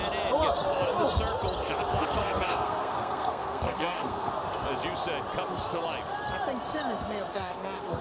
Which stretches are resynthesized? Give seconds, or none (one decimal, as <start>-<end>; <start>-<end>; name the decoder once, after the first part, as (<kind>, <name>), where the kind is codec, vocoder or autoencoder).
2.2-4.3 (codec, SNAC); 7.3-8.0